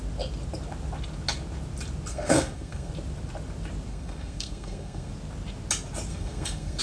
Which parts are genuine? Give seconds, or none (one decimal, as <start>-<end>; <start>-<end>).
0.0-2.1; 2.9-3.9; 5.1-6.1